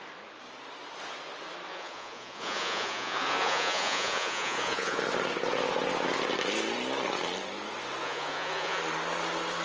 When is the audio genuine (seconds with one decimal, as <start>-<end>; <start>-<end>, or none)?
0.0-1.7; 5.0-8.0; 8.8-9.6